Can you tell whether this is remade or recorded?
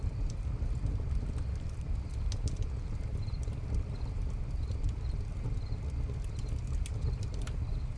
recorded